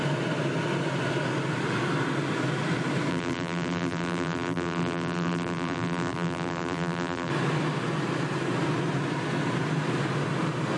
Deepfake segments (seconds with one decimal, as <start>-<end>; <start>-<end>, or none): 3.1-7.3